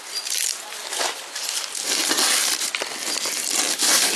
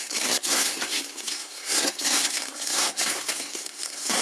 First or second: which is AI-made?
second